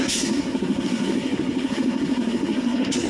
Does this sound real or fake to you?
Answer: fake